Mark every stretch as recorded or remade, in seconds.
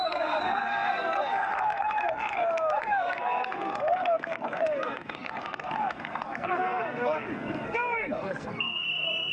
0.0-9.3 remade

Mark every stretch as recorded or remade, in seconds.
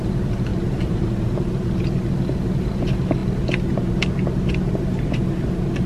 0.0-0.5 recorded; 0.5-1.4 remade; 1.4-5.9 recorded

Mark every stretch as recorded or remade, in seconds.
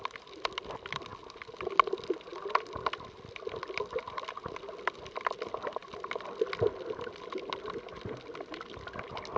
0.0-9.4 recorded